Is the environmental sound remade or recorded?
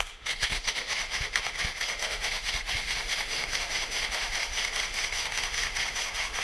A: remade